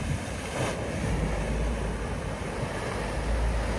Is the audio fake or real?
real